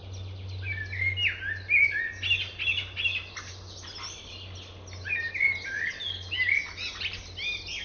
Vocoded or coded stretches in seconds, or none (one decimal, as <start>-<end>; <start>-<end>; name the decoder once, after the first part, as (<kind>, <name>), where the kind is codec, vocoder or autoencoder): none